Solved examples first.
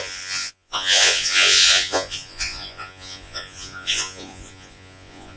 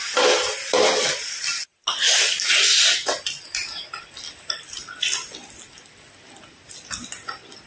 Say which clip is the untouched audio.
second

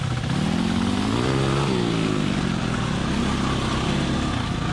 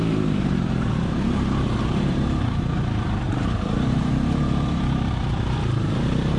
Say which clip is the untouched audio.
first